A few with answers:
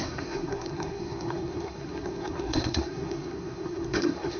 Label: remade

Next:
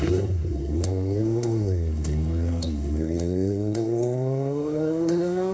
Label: remade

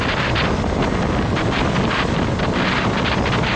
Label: recorded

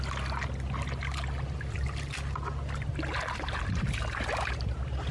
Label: recorded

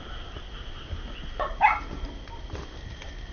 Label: recorded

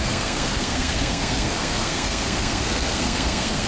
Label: remade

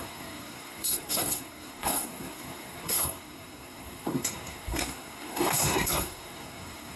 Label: remade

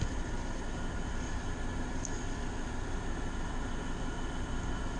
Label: recorded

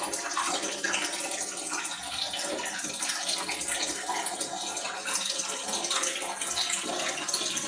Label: recorded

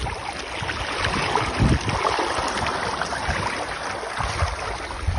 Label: recorded